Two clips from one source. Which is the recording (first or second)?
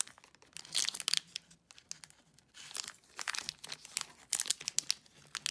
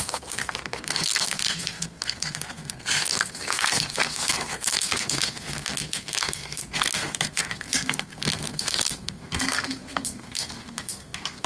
first